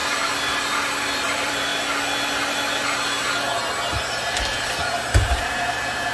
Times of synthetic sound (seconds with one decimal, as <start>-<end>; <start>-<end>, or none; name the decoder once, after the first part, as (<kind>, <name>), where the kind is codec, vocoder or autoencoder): 1.0-1.7 (vocoder, BigVGAN v2); 5.4-6.1